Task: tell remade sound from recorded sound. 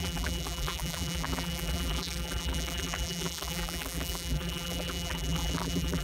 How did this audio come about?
remade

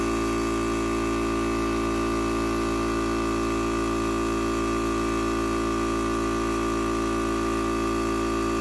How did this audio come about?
recorded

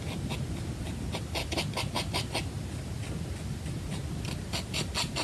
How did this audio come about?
recorded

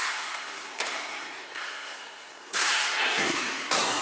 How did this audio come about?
remade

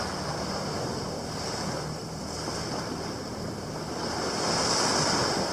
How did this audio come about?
recorded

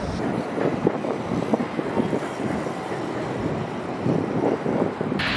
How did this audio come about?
recorded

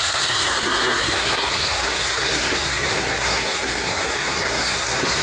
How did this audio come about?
remade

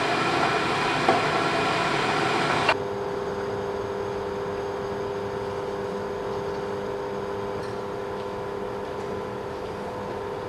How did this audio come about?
recorded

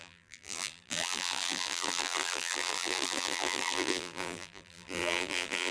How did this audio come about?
remade